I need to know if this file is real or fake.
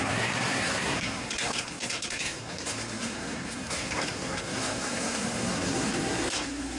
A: fake